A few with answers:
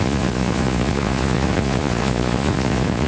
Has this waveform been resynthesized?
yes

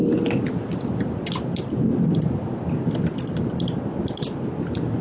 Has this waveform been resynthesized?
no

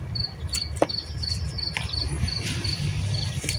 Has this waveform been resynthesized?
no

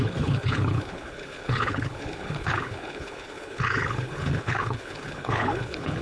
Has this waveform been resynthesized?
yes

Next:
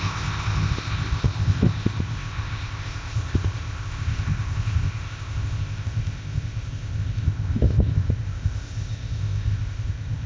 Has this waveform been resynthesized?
yes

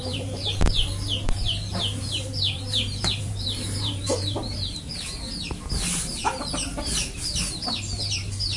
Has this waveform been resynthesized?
yes